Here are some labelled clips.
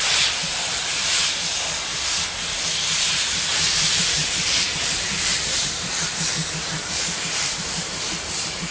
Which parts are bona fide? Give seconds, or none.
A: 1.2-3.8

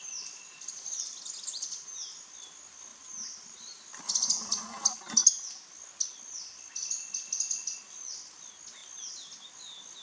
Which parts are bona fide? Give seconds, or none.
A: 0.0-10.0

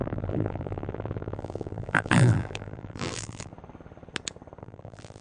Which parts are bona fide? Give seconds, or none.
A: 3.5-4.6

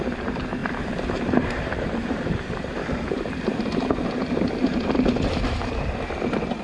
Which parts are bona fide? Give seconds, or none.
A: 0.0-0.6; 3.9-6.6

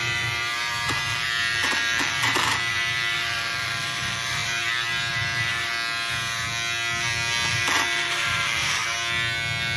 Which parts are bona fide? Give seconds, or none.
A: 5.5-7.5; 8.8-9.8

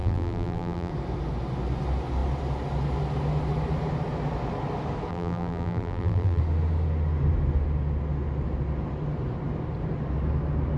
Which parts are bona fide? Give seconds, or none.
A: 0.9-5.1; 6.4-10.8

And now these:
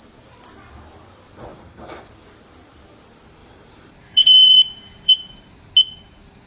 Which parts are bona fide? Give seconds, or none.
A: 0.0-1.5; 2.1-3.4; 5.7-6.5

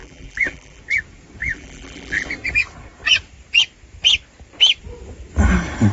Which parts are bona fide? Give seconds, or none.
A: 0.8-1.4; 2.3-5.9